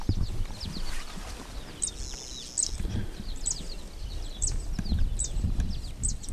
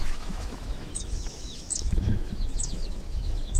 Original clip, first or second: first